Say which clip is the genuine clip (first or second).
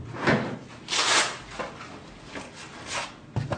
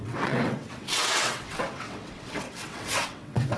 first